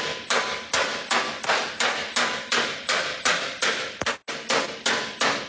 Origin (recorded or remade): recorded